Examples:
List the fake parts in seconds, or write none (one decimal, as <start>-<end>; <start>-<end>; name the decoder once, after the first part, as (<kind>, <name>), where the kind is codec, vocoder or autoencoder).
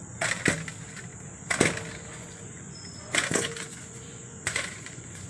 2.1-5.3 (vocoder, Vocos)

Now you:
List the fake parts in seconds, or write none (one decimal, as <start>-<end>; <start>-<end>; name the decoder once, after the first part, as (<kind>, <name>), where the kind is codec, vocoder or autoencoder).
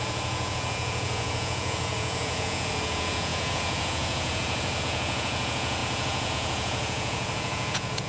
0.0-8.1 (vocoder, Vocos)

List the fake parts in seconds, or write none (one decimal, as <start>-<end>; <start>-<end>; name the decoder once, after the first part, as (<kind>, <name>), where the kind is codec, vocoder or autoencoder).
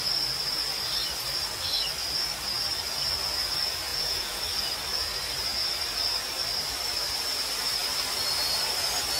3.9-4.4 (vocoder, Vocos)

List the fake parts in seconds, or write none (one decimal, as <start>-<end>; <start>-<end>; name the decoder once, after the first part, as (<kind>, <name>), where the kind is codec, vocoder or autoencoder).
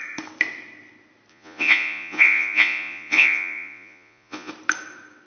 1.3-4.5 (vocoder, Vocos)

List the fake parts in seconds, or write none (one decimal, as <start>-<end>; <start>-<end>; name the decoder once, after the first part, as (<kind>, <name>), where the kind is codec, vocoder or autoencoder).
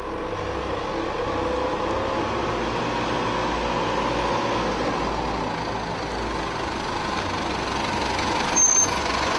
8.7-9.4 (vocoder, Vocos)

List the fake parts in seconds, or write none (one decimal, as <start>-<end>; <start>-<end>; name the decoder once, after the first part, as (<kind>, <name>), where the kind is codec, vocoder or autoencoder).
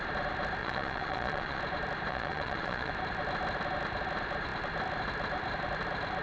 0.6-1.6 (vocoder, Vocos); 2.1-2.9